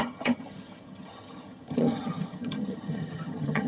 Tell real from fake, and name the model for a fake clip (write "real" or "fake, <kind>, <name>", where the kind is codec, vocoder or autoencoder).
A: fake, vocoder, HiFi-GAN